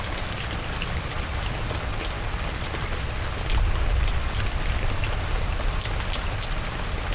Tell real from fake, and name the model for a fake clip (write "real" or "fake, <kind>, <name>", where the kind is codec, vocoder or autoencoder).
real